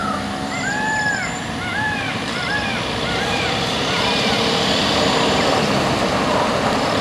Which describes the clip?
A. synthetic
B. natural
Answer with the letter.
A